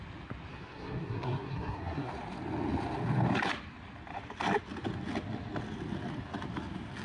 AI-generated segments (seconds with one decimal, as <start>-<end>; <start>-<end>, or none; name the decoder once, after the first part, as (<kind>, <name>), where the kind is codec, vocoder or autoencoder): 0.5-2.1 (codec, SNAC)